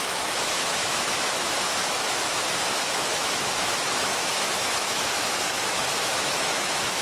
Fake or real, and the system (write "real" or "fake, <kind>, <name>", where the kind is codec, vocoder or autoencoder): fake, autoencoder, DAC-VAE